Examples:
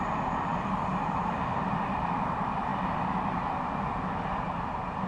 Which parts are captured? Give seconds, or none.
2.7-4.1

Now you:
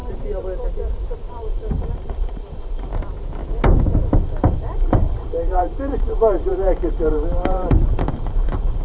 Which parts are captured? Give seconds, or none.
0.0-1.3; 2.9-4.2

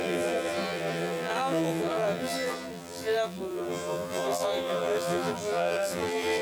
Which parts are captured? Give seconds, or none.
none